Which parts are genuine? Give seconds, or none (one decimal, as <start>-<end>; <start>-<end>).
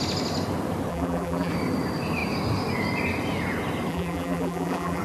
0.0-0.9; 1.5-3.9